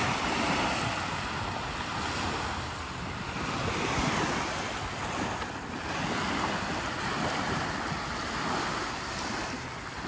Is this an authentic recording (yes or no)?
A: yes